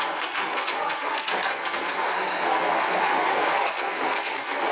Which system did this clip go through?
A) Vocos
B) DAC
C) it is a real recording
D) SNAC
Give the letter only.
D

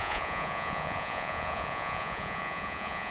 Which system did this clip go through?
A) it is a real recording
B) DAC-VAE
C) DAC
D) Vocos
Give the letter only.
D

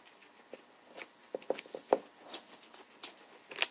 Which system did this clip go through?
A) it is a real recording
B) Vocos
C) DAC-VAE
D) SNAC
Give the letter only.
A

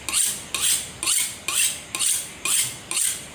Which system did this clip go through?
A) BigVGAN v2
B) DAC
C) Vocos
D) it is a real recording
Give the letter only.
D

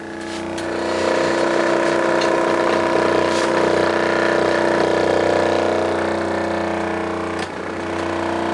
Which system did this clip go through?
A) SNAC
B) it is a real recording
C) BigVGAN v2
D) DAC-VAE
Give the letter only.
B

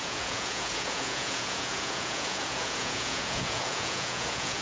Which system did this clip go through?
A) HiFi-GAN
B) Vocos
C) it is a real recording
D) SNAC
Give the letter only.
B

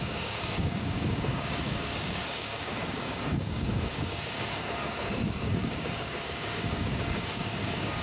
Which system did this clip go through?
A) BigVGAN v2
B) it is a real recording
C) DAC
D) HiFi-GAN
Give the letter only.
C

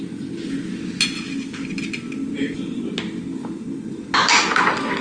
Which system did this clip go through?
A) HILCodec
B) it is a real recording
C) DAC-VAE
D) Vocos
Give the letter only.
B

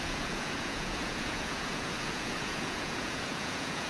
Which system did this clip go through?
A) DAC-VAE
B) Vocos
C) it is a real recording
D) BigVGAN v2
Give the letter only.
B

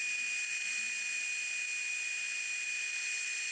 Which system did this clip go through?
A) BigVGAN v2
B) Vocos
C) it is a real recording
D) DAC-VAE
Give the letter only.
C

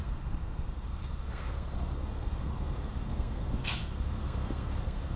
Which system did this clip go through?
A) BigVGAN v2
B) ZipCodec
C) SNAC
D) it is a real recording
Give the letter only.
C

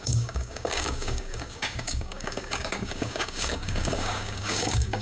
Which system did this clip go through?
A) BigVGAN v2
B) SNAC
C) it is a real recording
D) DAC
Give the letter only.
D